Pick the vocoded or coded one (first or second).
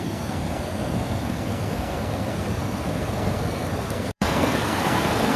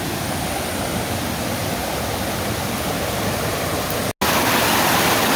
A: first